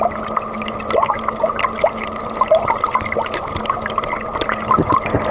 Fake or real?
real